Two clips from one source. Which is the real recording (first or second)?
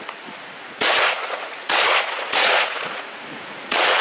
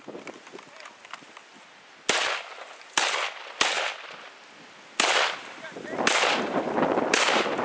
second